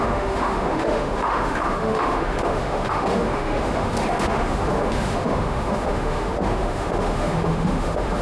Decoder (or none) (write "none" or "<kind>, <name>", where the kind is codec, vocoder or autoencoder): autoencoder, DAC-VAE